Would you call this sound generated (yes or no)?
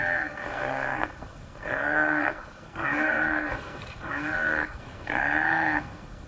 yes